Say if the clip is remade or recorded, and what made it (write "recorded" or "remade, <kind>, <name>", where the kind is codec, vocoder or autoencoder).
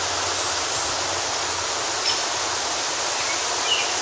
recorded